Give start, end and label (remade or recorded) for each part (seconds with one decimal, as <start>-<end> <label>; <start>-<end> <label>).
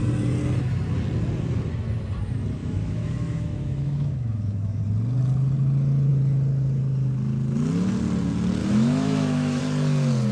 0.0-2.6 recorded; 2.6-4.8 remade; 4.8-8.6 recorded; 8.6-9.6 remade; 9.6-10.3 recorded